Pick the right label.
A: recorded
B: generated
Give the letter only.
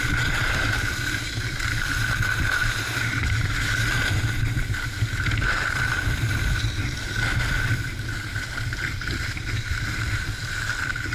A